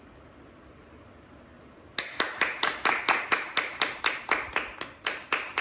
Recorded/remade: recorded